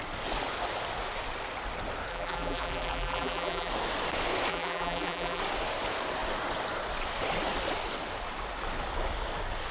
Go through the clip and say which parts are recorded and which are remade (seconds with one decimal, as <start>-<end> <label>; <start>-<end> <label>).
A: 0.0-2.1 recorded; 2.1-3.7 remade; 3.7-4.5 recorded; 4.5-5.4 remade; 5.4-9.7 recorded